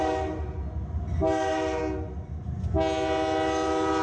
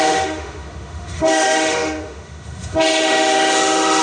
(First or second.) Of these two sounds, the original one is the first